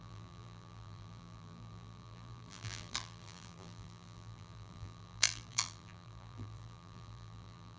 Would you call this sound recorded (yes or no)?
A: no